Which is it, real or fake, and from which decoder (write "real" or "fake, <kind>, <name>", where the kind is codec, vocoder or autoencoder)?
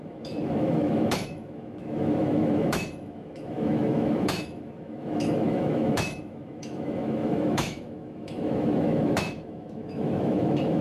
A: fake, autoencoder, DAC-VAE